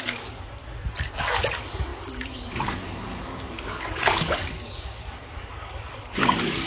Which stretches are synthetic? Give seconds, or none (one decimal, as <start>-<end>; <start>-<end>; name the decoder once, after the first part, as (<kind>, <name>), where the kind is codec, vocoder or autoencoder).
0.0-0.6 (codec, DAC); 1.2-6.7